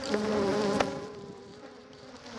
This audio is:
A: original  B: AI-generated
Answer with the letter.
B